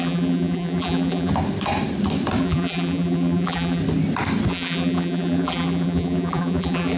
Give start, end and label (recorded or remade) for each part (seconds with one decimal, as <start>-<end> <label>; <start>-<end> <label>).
0.0-1.3 remade; 1.3-2.4 recorded; 2.4-3.8 remade; 3.8-4.5 recorded; 4.5-7.0 remade